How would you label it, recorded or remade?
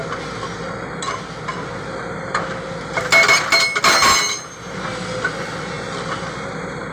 recorded